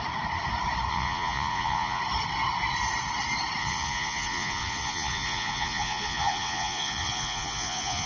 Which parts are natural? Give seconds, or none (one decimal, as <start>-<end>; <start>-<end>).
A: 0.0-0.9; 2.0-3.6